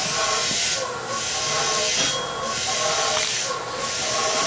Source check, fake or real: real